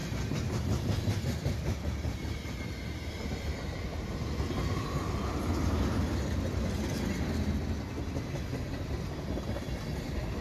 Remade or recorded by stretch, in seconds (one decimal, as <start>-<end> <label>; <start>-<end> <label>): 0.0-3.1 remade; 3.1-10.4 recorded